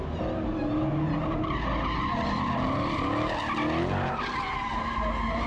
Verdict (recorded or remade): recorded